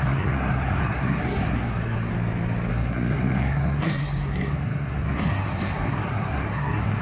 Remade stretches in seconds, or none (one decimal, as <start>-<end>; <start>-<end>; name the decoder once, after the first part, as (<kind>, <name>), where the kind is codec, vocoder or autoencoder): 0.0-2.1 (codec, SNAC); 2.7-7.0

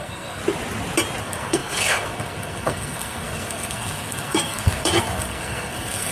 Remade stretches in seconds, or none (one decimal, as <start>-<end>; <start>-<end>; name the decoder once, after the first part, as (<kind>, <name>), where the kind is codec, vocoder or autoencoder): 0.0-0.4 (codec, SNAC); 1.2-6.1

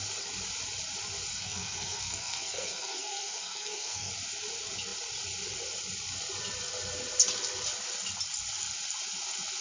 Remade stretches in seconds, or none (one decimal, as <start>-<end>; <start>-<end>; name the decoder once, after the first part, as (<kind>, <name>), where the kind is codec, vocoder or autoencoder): 1.3-4.1 (codec, SNAC)

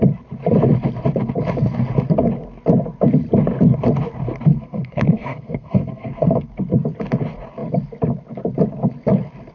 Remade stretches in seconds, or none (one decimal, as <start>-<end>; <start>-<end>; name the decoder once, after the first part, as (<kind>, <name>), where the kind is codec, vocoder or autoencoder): 4.5-6.5 (codec, SNAC)

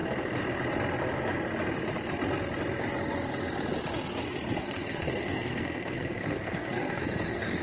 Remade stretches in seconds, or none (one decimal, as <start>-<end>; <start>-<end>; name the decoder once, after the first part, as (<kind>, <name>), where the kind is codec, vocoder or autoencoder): 4.6-7.6 (codec, SNAC)

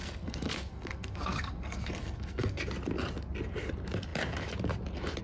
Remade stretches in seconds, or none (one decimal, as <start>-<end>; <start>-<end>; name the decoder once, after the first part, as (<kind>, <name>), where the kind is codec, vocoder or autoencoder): 0.0-2.6 (codec, SNAC)